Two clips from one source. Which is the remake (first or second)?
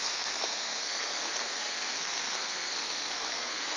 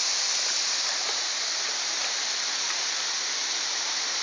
first